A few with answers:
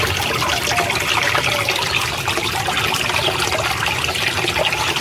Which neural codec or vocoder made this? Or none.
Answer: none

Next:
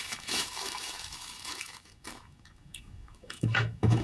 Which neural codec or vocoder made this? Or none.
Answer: autoencoder, DAC-VAE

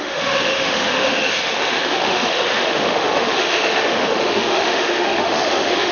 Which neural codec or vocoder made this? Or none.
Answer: autoencoder, DAC-VAE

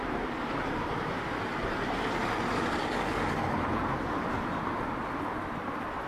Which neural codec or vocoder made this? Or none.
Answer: none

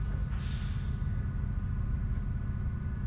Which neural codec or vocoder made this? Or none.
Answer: none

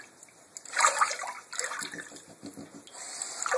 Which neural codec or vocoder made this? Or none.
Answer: none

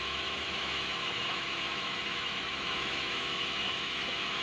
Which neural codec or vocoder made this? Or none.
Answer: autoencoder, DAC-VAE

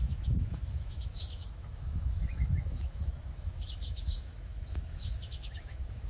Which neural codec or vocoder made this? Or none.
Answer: autoencoder, DAC-VAE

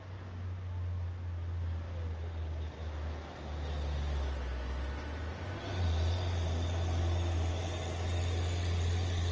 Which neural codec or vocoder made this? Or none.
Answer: none